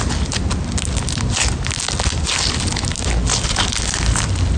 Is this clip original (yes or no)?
yes